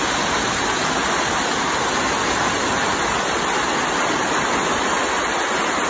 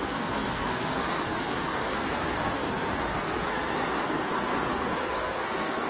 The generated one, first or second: second